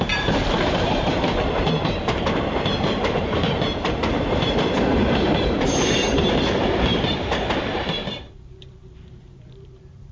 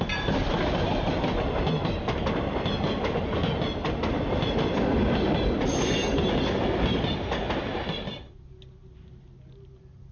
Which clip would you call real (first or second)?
second